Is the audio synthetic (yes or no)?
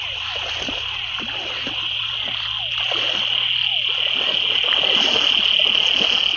no